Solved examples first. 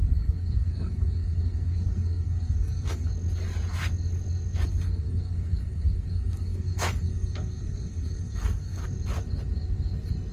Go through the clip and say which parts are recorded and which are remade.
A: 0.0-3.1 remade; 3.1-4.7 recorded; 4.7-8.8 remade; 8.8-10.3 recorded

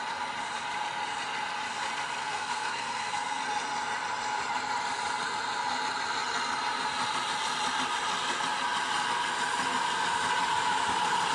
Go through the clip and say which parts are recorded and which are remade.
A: 0.0-2.2 recorded; 2.2-3.4 remade; 3.4-11.3 recorded

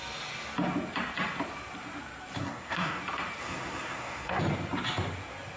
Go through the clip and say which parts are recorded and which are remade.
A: 0.0-2.4 recorded; 2.4-3.0 remade; 3.0-3.4 recorded; 3.4-4.4 remade; 4.4-5.6 recorded

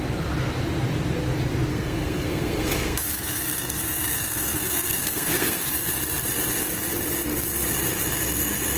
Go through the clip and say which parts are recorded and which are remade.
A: 0.0-1.7 recorded; 1.7-5.9 remade; 5.9-8.8 recorded

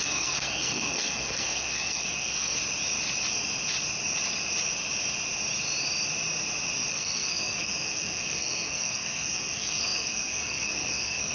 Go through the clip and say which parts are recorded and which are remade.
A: 0.0-2.6 remade; 2.6-6.9 recorded; 6.9-11.3 remade

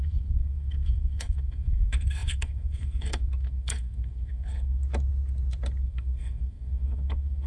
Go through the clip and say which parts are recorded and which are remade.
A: 0.0-4.8 remade; 4.8-5.8 recorded; 5.8-7.5 remade

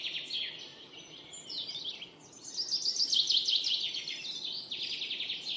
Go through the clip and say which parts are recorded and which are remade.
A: 0.0-5.6 recorded

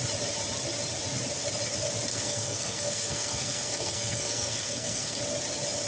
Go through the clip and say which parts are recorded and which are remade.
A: 0.0-2.1 recorded; 2.1-5.2 remade; 5.2-5.9 recorded